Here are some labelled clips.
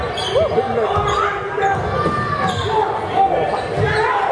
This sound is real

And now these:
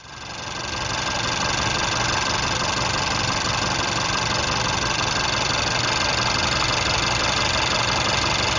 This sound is real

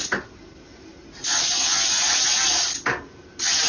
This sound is real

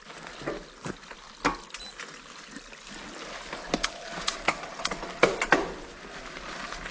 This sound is real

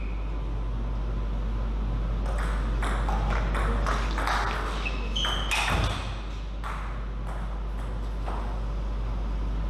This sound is real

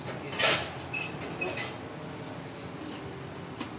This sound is real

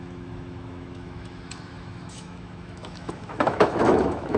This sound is fake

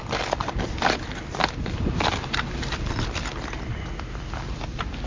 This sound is real